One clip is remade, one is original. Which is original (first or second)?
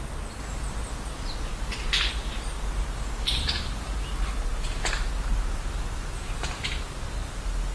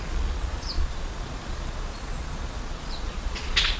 first